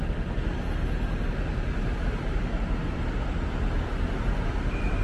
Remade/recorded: recorded